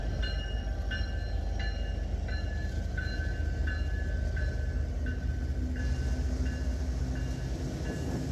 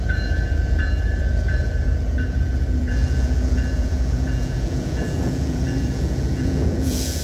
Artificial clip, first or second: second